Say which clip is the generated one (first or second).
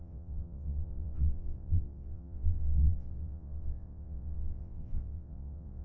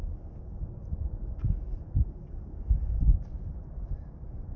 first